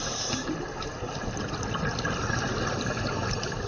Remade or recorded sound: recorded